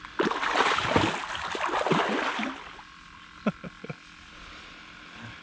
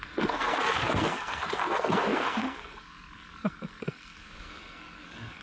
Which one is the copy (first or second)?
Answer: second